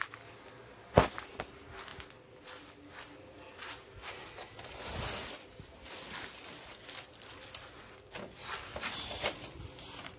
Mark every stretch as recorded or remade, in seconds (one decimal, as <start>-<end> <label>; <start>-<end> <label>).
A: 0.0-10.2 recorded